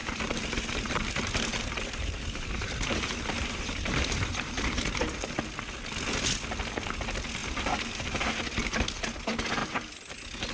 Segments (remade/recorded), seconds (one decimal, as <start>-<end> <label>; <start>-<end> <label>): 0.0-4.8 remade; 4.8-7.4 recorded; 7.4-8.0 remade; 8.0-9.6 recorded; 9.6-10.1 remade; 10.1-10.5 recorded